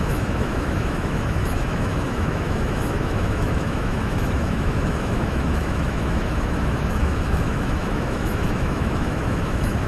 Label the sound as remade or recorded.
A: remade